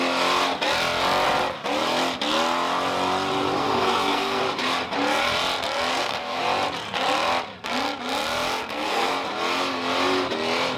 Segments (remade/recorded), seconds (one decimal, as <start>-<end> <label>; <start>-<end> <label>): 0.0-3.6 recorded; 3.6-4.4 remade; 4.4-5.9 recorded; 5.9-6.4 remade; 6.4-8.6 recorded; 8.6-9.1 remade; 9.1-10.8 recorded